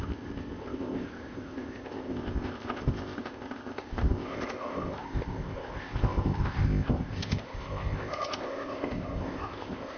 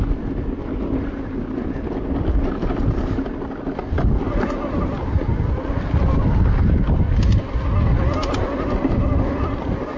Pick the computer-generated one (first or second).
first